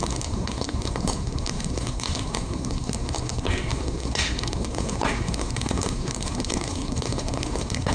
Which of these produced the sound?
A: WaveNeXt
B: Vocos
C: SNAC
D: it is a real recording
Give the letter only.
C